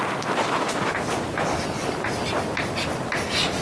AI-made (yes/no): no